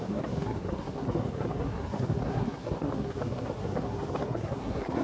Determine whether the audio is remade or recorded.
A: remade